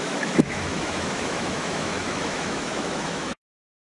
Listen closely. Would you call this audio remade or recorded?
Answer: remade